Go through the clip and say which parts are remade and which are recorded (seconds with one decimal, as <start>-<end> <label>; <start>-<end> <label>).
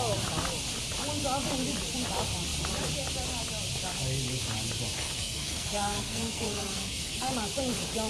0.0-5.0 recorded; 5.0-7.3 remade; 7.3-8.1 recorded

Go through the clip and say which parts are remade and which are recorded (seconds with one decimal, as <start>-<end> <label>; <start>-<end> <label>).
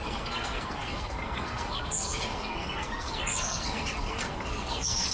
0.0-5.1 remade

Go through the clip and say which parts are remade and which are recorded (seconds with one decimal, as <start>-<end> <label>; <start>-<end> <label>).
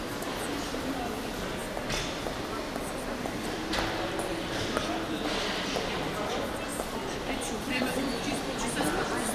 0.0-9.3 recorded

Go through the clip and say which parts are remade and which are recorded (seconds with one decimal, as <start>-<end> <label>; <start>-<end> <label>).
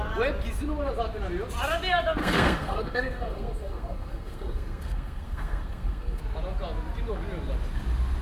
0.0-2.2 recorded; 2.2-6.2 remade; 6.2-8.2 recorded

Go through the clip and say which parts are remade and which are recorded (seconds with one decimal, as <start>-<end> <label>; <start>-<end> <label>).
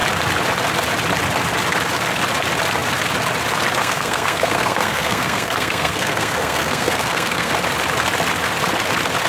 0.0-3.8 recorded; 3.8-7.5 remade; 7.5-9.3 recorded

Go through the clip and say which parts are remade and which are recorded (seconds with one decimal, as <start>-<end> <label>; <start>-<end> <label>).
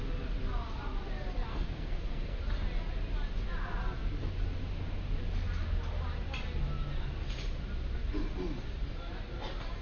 0.0-1.5 recorded; 1.5-2.4 remade; 2.4-9.8 recorded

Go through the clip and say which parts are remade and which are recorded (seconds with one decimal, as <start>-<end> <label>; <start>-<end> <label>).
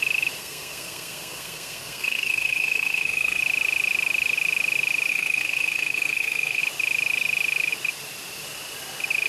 0.0-0.4 recorded; 0.4-3.4 remade; 3.4-5.1 recorded; 5.1-6.6 remade; 6.6-9.3 recorded